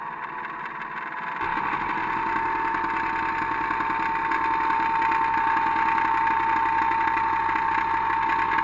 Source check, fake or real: real